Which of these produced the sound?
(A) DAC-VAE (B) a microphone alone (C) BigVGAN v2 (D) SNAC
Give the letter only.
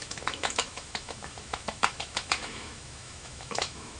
A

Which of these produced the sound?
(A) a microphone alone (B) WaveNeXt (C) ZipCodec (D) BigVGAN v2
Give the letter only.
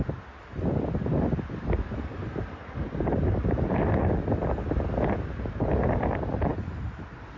A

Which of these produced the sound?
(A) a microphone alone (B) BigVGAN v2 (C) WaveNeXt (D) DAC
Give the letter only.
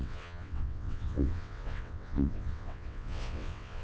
C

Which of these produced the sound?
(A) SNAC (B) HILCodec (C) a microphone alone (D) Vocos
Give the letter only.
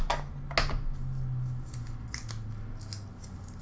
C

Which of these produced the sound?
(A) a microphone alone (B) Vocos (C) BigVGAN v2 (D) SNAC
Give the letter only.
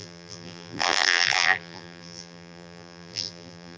C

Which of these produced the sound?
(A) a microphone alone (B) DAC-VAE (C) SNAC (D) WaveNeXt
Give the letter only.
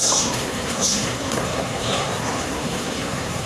C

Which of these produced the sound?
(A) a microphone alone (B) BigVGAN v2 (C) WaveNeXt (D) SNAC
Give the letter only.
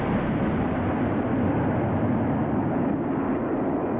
A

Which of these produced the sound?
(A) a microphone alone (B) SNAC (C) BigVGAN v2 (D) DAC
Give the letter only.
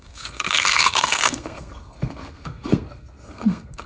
B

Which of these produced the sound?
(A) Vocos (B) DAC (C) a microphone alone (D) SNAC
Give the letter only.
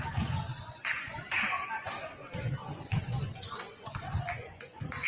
A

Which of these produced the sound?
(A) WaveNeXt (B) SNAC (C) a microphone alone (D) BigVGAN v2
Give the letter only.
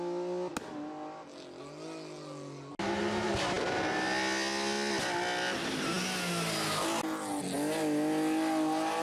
C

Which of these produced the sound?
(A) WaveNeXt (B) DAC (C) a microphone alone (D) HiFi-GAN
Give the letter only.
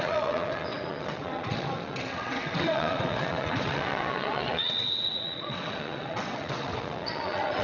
A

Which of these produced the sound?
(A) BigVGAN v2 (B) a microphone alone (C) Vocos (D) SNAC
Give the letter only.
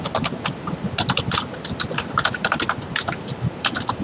B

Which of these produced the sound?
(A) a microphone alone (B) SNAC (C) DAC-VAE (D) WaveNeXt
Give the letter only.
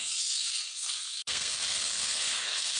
B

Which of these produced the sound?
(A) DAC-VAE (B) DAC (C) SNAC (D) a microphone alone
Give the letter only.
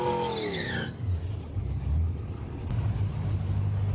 D